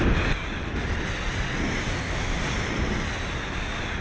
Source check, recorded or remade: recorded